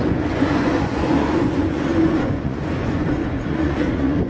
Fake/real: fake